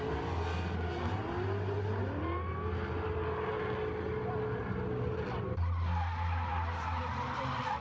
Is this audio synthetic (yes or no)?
no